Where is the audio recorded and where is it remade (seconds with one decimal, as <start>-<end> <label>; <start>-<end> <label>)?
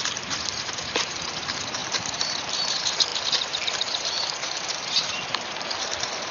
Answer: 0.0-6.3 remade